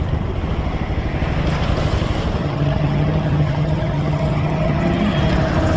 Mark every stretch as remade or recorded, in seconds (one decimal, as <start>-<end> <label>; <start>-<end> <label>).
0.0-2.4 recorded; 2.4-5.2 remade; 5.2-5.8 recorded